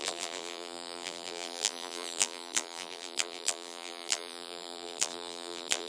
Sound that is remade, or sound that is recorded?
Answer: remade